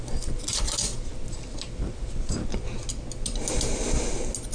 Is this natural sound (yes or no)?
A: yes